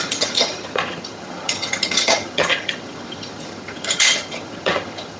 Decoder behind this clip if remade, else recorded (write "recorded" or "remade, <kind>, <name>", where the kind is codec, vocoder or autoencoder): remade, vocoder, HiFi-GAN